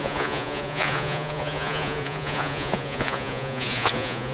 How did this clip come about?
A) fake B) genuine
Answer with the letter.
A